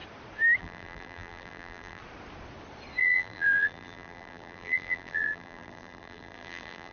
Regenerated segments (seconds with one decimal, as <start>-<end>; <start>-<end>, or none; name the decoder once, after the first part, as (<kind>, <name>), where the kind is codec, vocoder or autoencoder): 0.6-2.0 (vocoder, BigVGAN v2); 3.0-6.9